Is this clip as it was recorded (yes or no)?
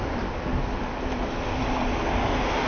yes